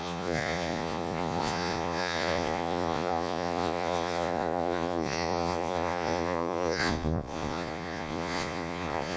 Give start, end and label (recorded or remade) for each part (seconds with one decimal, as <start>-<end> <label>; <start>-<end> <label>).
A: 0.0-9.2 remade